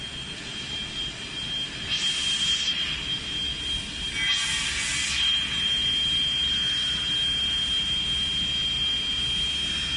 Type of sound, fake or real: real